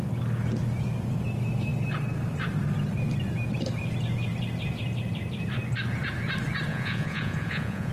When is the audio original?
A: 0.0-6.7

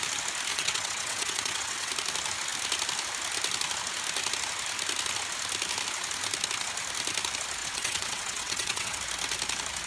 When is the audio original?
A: 0.0-0.5; 1.9-7.6; 9.0-9.9

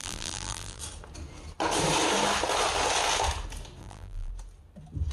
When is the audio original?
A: 0.8-3.8; 4.3-5.1